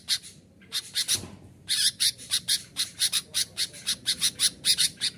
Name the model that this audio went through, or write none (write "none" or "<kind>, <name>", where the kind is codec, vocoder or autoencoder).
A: vocoder, BigVGAN v2